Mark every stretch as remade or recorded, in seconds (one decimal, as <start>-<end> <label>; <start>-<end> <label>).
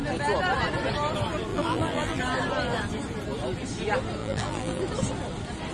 0.0-1.5 recorded; 1.5-2.2 remade; 2.2-4.2 recorded; 4.2-4.8 remade; 4.8-5.7 recorded